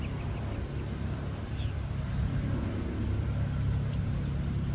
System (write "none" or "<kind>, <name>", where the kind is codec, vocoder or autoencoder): none